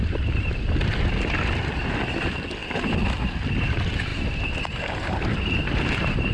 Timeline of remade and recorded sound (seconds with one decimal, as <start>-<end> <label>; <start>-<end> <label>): 0.0-6.3 recorded

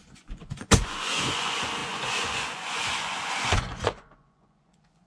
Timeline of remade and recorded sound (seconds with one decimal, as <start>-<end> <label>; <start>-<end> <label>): 0.0-5.1 remade

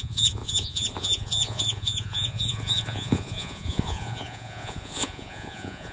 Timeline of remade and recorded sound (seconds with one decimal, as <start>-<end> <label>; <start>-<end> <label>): 0.0-5.9 remade

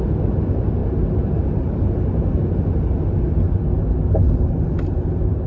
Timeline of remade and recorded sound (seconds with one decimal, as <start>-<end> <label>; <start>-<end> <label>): 0.0-5.5 recorded